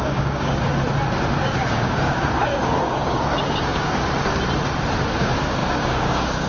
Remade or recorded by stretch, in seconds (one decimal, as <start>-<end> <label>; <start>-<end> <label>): 0.0-0.7 remade; 0.7-1.4 recorded; 1.4-4.0 remade; 4.0-5.1 recorded; 5.1-6.5 remade